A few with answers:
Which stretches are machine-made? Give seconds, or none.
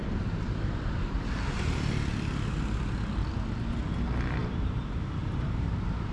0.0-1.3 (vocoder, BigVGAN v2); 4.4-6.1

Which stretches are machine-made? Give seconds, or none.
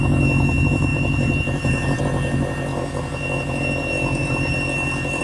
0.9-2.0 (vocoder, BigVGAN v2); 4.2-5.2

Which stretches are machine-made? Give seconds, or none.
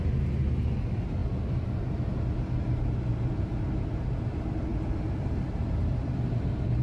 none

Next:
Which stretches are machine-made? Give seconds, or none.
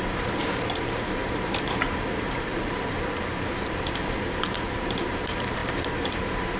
0.0-6.6 (vocoder, BigVGAN v2)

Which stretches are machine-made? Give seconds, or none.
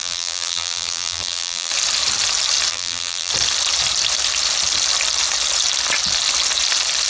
0.0-1.7 (vocoder, BigVGAN v2); 2.7-3.3